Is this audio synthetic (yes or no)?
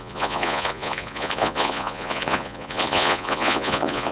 yes